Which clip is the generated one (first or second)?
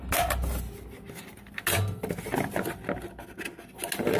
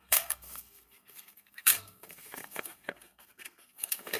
second